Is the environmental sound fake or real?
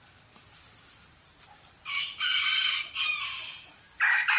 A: real